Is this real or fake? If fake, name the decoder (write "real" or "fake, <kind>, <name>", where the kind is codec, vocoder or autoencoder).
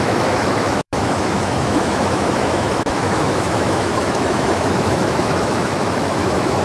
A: fake, autoencoder, DAC-VAE